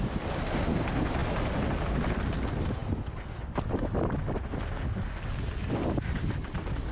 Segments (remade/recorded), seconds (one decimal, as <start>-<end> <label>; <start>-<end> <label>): 0.0-6.9 recorded